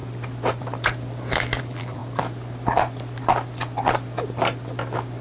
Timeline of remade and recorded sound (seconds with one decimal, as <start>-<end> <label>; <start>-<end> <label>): 0.0-1.6 recorded; 1.6-2.0 remade; 2.0-5.2 recorded